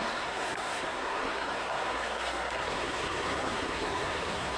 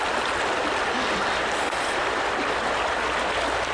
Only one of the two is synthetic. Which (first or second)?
first